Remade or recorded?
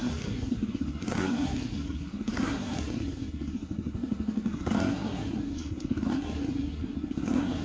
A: remade